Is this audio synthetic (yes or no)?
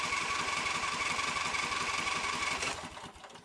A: yes